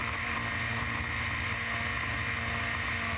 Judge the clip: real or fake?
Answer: real